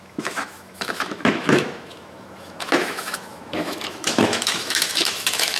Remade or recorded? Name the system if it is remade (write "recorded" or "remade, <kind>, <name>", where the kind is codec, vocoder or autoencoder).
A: remade, autoencoder, DAC-VAE